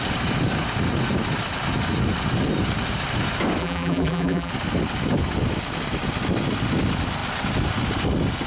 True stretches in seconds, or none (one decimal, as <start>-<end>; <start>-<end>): 0.0-3.6; 4.5-8.5